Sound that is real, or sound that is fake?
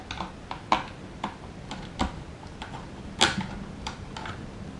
real